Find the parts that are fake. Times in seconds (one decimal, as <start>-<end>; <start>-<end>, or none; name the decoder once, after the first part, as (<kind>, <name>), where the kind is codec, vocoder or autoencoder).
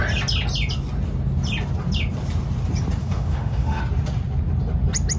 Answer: 3.0-3.8 (autoencoder, DAC-VAE)